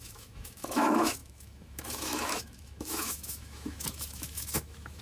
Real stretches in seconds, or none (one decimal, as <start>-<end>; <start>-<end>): none